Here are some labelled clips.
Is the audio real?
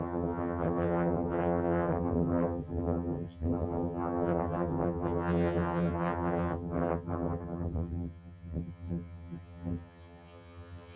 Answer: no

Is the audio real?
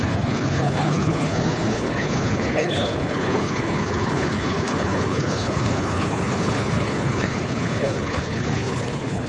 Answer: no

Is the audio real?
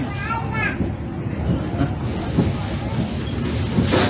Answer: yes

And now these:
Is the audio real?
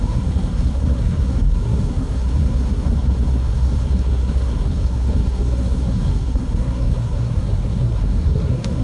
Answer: no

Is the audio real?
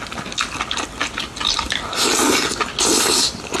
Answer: yes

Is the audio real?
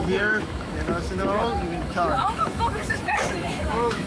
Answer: no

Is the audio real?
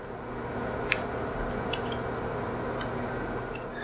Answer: yes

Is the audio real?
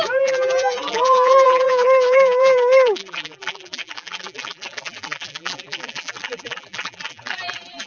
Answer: no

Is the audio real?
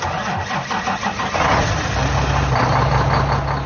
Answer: yes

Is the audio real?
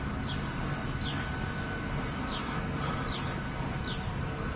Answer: yes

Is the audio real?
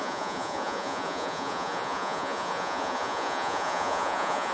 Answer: no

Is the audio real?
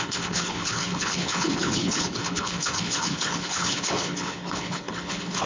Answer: no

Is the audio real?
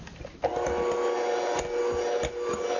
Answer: yes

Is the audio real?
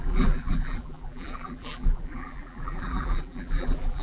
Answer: no